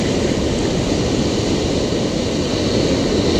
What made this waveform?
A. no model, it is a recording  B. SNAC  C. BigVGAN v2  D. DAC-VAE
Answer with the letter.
A